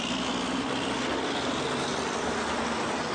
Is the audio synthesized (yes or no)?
no